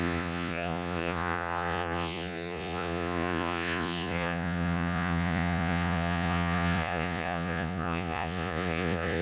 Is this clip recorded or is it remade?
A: remade